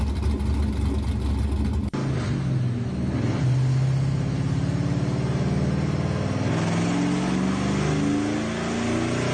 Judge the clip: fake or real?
real